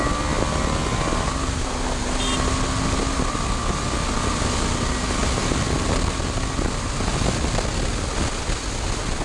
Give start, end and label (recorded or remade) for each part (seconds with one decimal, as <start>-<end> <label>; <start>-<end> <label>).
0.0-9.2 recorded